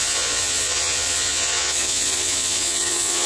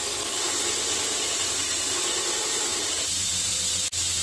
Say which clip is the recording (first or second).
second